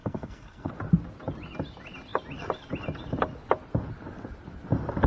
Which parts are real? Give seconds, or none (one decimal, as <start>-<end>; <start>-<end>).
0.7-5.1